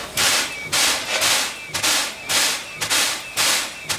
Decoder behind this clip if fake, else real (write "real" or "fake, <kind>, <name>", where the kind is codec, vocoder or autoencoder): real